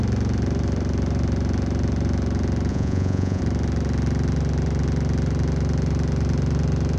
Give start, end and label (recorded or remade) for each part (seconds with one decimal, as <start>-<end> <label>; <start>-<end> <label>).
0.0-2.7 recorded; 2.7-3.4 remade; 3.4-7.0 recorded